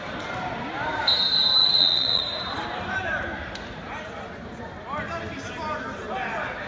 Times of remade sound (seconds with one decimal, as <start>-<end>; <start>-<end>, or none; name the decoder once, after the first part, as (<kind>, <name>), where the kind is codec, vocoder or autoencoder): 1.6-2.2 (vocoder, Vocos)